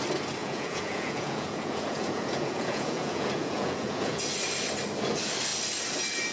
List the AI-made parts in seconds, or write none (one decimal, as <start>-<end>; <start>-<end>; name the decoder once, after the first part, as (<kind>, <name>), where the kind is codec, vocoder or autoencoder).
0.4-4.2 (vocoder, Vocos)